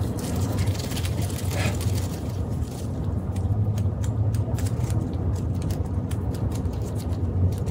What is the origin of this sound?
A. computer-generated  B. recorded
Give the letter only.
B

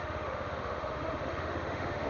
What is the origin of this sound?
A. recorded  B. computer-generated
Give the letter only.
B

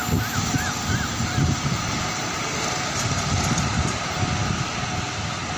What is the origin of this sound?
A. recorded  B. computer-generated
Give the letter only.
A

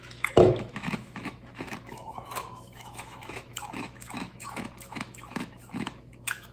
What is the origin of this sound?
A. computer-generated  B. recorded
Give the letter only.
A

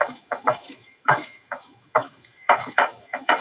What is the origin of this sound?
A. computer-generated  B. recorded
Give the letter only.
A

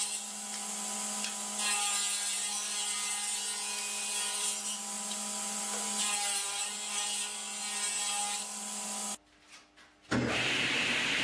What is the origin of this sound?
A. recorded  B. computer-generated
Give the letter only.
A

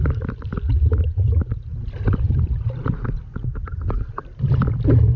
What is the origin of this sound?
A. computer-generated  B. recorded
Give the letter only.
B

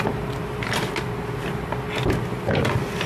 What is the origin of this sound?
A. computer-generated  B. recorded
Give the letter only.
B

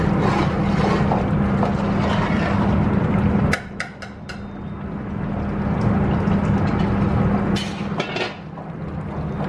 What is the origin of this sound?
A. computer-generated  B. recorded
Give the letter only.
B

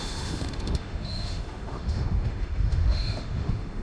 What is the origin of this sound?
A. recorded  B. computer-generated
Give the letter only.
B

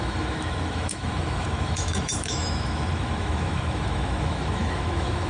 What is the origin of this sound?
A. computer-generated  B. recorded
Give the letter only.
A